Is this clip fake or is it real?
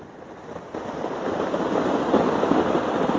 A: real